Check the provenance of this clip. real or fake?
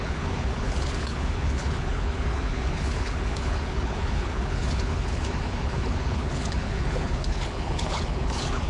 fake